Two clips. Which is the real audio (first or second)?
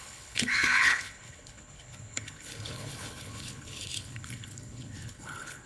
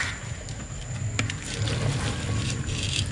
second